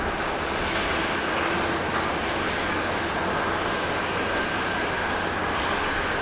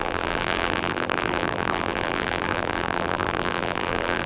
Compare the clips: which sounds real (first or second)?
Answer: first